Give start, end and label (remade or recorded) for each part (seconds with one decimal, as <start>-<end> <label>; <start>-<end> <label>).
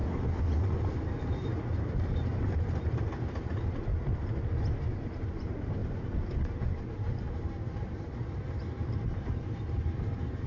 0.0-1.1 recorded; 1.1-3.9 remade; 3.9-5.3 recorded; 5.3-5.8 remade; 5.8-6.8 recorded; 6.8-10.5 remade